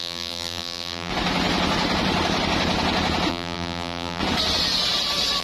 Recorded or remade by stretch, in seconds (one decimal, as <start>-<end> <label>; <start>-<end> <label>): 0.0-1.1 remade; 1.1-3.3 recorded; 3.3-4.2 remade; 4.2-5.4 recorded